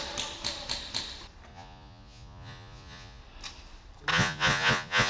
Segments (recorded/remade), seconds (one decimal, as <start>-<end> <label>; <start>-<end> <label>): 0.0-1.5 recorded; 1.5-3.2 remade; 3.2-4.1 recorded; 4.1-5.1 remade